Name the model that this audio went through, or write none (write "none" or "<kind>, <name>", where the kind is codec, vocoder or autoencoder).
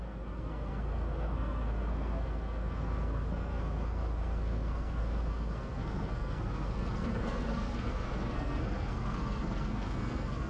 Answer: codec, SNAC